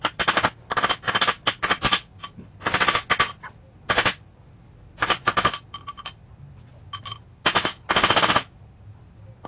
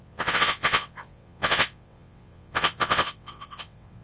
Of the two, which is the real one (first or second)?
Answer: first